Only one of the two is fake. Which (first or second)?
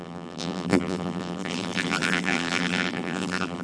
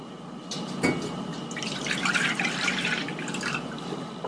first